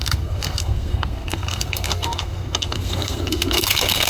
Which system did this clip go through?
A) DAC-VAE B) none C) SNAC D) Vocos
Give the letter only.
C